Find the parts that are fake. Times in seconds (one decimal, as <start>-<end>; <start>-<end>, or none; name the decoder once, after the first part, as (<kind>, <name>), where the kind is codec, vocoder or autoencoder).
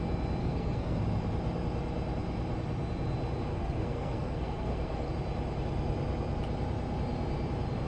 0.4-1.0 (codec, SNAC); 3.5-5.1